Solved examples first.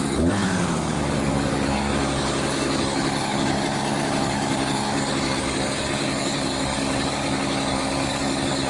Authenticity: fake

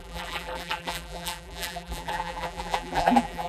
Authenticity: fake